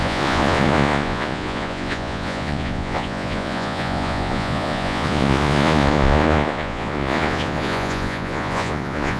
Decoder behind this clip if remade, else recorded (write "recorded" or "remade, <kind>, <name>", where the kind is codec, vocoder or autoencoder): remade, vocoder, Vocos